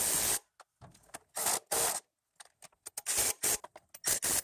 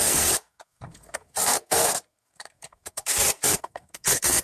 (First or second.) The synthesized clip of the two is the second